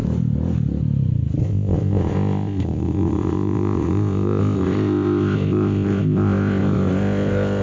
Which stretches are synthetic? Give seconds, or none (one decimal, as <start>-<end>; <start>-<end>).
1.4-7.6